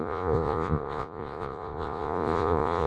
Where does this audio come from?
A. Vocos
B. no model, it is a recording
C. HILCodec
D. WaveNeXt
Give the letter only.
A